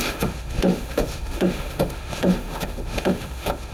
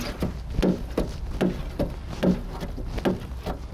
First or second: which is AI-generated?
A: first